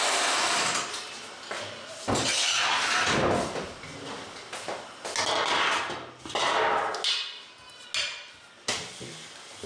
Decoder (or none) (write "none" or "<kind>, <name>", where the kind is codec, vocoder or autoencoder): none